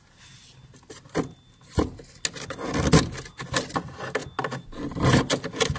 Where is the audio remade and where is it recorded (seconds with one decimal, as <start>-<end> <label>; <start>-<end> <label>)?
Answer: 0.0-5.8 recorded